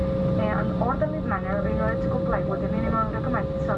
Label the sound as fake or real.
real